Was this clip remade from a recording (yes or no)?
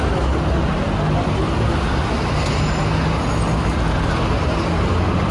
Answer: no